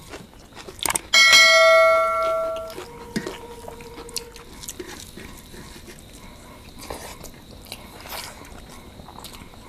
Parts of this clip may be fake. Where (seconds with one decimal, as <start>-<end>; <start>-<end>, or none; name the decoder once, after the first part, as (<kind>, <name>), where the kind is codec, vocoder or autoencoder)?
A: none